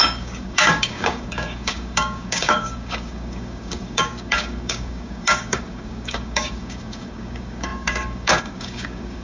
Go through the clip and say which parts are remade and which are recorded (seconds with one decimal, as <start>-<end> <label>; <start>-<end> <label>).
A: 0.0-9.2 remade